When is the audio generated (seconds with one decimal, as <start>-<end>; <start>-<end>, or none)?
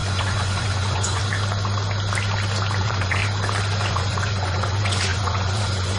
0.0-1.2; 2.8-3.2; 3.9-6.0